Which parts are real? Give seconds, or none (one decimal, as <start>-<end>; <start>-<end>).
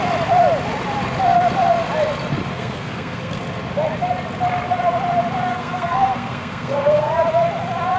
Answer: 0.0-2.5; 3.4-5.5; 7.1-8.0